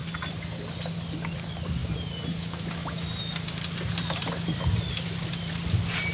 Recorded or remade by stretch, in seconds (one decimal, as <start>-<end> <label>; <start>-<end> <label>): 0.0-6.1 recorded